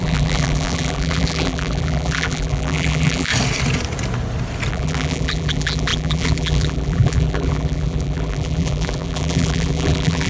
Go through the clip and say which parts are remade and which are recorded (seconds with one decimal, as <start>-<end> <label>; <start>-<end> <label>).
0.0-3.3 remade; 3.3-4.7 recorded; 4.7-10.3 remade